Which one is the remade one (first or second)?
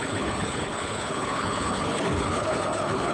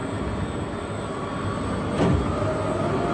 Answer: first